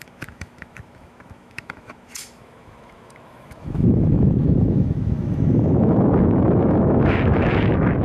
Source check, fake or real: fake